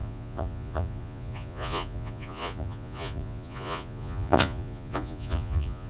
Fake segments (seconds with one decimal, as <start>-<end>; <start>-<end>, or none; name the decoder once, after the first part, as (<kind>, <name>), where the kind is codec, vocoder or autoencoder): 0.0-5.9 (vocoder, Vocos)